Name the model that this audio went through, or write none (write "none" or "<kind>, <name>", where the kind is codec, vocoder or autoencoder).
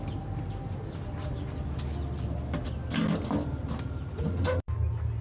none